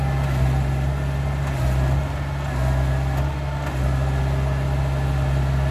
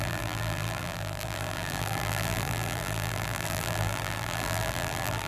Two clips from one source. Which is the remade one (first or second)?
second